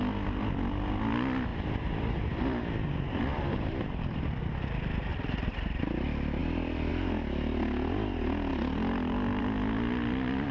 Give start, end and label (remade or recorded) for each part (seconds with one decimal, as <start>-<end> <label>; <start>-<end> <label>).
0.0-1.5 recorded; 1.5-4.5 remade; 4.5-5.1 recorded; 5.1-5.8 remade; 5.8-6.4 recorded; 6.4-6.9 remade; 6.9-8.5 recorded; 8.5-9.4 remade; 9.4-10.5 recorded